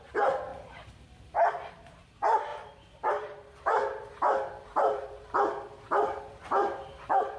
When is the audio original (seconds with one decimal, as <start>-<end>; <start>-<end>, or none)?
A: 0.5-1.7; 2.5-3.1; 3.8-4.5